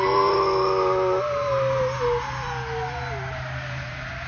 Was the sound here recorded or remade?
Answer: recorded